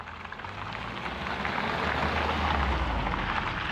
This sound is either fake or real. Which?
real